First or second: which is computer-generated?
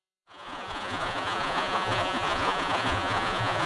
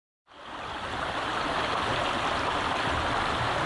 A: first